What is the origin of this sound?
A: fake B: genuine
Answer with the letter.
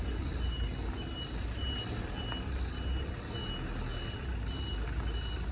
B